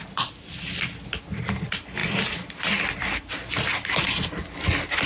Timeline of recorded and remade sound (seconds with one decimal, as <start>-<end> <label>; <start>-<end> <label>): 0.0-5.1 recorded